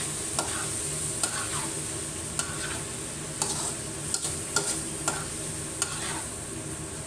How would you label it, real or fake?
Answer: real